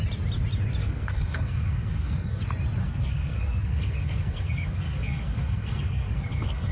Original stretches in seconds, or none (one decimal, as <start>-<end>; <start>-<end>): 0.0-0.8; 2.4-2.8